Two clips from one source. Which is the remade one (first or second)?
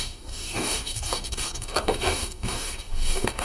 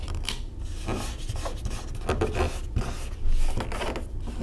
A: first